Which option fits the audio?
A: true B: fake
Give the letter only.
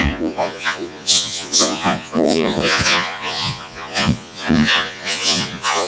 B